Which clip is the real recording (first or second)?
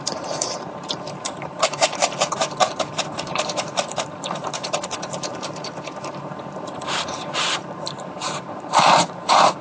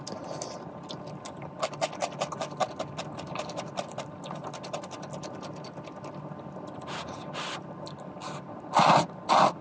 second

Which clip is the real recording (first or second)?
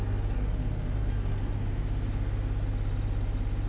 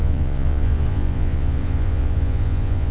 first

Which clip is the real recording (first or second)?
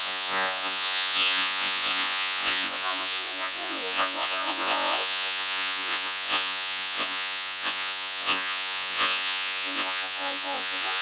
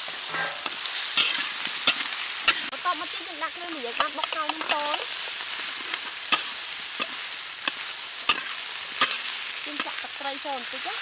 second